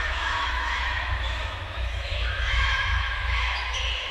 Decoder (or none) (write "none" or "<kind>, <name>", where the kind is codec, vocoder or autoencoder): autoencoder, DAC-VAE